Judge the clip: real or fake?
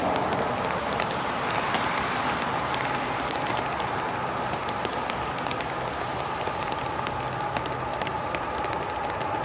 real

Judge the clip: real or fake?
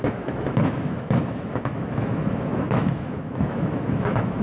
fake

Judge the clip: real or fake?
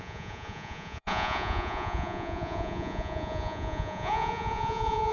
fake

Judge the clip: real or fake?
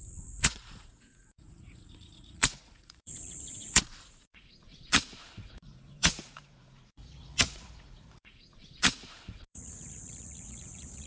fake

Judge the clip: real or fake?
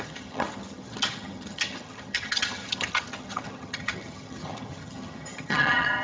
fake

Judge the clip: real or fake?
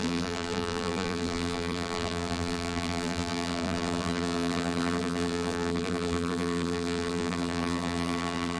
fake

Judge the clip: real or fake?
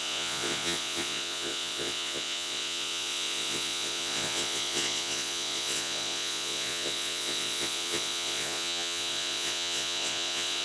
fake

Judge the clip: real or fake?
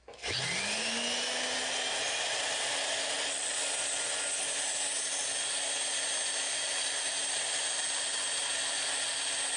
real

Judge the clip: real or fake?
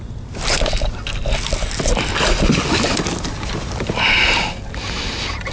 real